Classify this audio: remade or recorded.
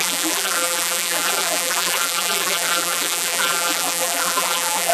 remade